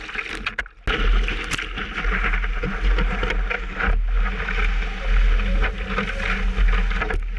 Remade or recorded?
recorded